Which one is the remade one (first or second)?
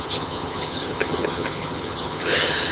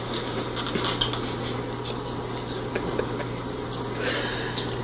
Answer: first